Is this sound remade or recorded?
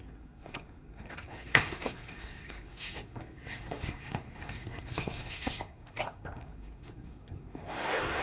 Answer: remade